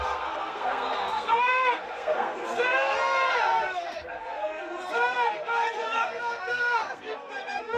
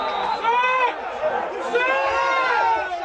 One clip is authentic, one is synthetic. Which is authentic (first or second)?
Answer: second